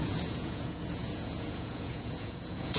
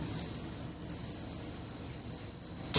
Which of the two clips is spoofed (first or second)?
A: first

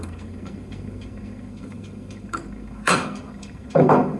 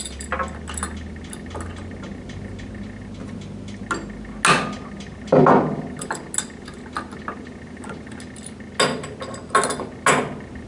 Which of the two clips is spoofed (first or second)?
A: first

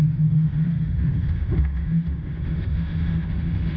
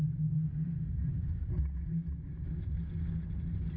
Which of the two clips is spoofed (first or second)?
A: first